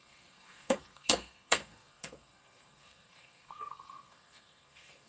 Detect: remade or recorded remade